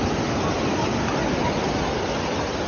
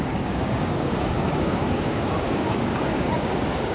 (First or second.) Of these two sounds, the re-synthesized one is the second